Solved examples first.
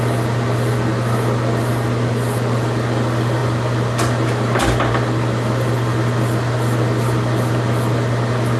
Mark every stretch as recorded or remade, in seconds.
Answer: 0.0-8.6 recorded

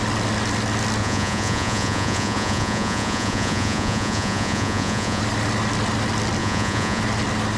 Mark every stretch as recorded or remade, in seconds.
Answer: 0.0-1.0 recorded; 1.0-5.2 remade; 5.2-6.4 recorded; 6.4-7.0 remade; 7.0-7.6 recorded

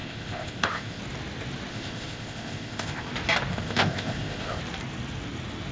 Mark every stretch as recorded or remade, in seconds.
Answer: 0.0-1.0 remade; 1.0-1.7 recorded; 1.7-3.1 remade; 3.1-3.5 recorded; 3.5-4.6 remade; 4.6-5.7 recorded

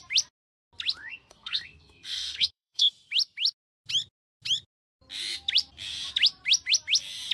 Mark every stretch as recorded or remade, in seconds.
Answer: 0.0-1.0 recorded; 1.0-2.9 remade; 2.9-7.3 recorded